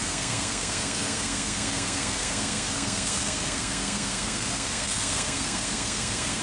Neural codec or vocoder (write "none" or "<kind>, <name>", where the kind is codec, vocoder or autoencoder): codec, SNAC